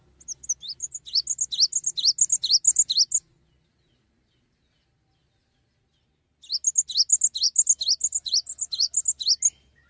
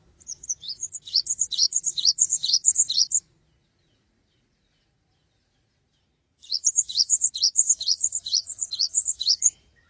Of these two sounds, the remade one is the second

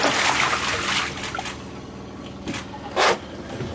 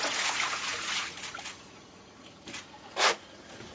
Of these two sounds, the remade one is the second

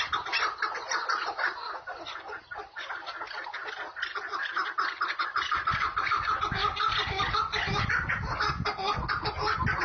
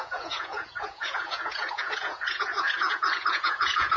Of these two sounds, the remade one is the second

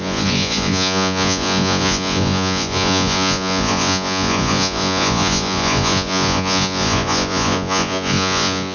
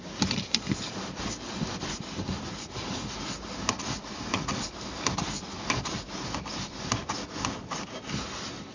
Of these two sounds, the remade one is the first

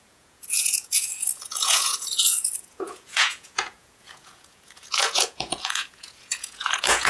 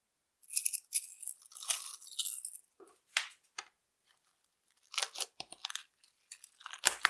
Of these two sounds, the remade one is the first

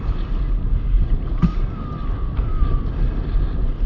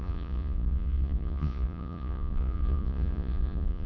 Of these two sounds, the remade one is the second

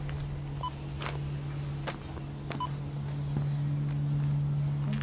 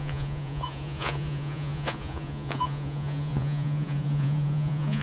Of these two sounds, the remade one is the second